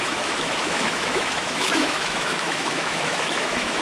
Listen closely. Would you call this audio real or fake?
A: fake